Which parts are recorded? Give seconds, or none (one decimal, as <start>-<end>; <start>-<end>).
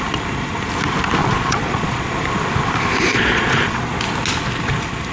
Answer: 0.0-1.2; 2.1-3.1; 3.8-5.1